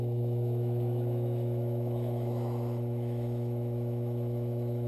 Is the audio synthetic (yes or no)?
yes